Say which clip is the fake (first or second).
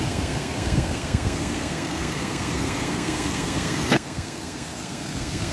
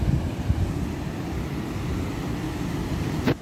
first